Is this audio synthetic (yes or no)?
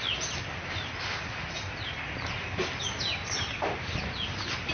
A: no